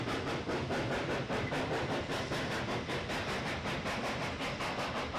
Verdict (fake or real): real